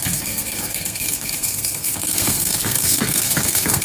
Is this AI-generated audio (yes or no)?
yes